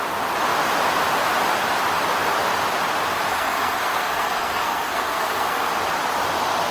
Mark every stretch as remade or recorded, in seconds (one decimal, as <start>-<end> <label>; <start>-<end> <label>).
0.0-3.3 recorded; 3.3-5.7 remade; 5.7-6.7 recorded